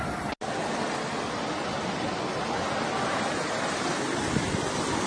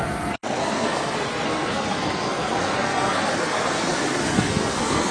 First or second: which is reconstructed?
second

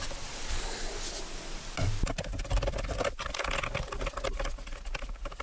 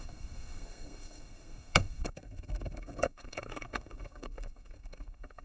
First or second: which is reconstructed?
second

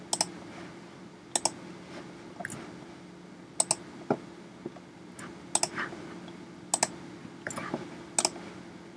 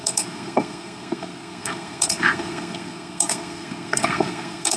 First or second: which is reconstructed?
second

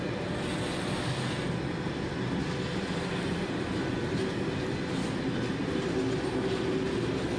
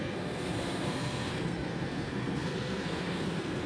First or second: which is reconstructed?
second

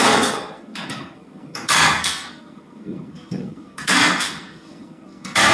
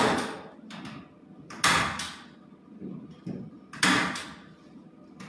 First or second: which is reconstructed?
first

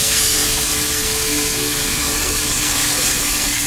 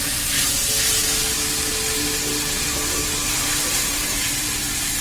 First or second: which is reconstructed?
first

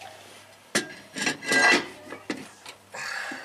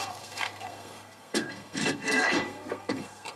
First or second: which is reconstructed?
second